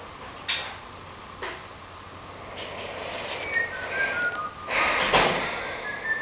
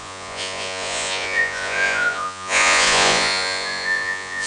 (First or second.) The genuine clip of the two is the first